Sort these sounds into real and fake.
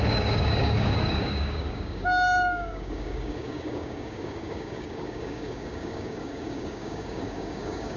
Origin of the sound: fake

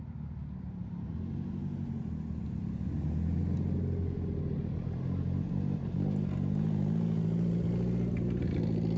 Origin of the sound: real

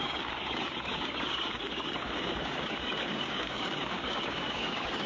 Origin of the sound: fake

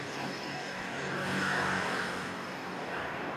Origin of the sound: fake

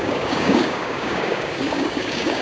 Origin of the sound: fake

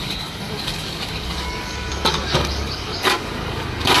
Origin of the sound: fake